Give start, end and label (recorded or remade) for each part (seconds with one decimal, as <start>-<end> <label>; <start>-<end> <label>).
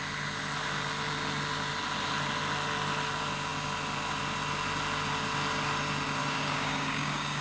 0.0-6.2 recorded; 6.2-7.4 remade